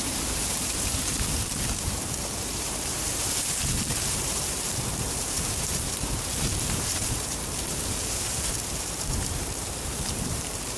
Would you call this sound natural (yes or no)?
no